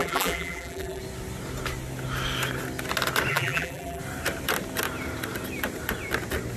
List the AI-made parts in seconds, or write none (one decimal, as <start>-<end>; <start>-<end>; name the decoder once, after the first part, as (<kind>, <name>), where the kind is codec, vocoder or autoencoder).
0.0-1.0 (vocoder, BigVGAN v2); 3.3-4.0